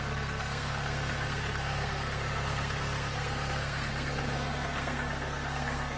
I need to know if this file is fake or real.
fake